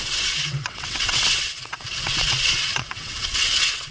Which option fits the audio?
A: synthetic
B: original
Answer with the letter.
A